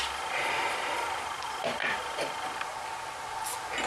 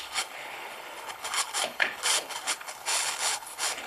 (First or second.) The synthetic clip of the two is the second